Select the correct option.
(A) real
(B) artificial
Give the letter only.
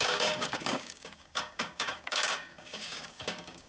B